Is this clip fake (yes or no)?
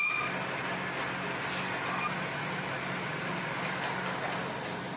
no